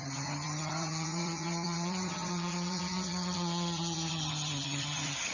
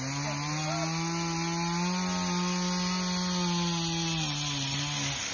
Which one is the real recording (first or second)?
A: second